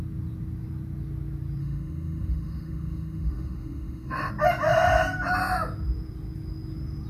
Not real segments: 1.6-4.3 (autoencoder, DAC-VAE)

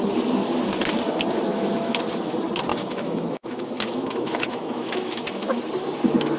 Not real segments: 1.5-2.0 (autoencoder, DAC-VAE); 2.7-5.6

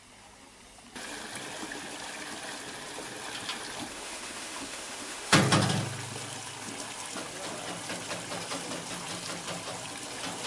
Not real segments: 3.9-5.3 (autoencoder, DAC-VAE)

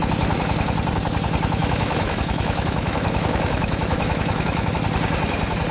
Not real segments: 1.6-4.7 (autoencoder, DAC-VAE)

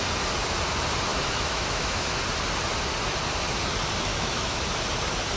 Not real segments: 1.1-2.2 (autoencoder, DAC-VAE); 4.1-4.6

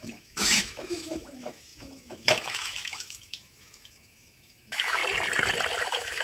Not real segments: 0.0-5.0 (autoencoder, DAC-VAE); 5.8-6.2